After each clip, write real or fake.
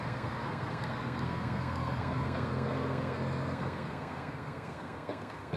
fake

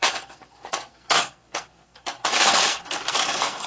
fake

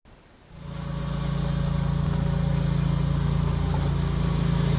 real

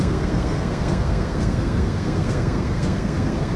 fake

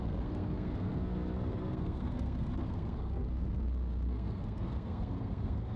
fake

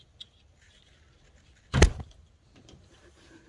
real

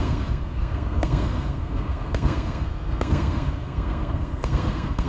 fake